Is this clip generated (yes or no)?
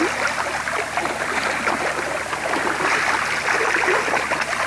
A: no